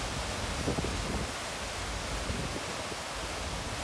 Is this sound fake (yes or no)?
no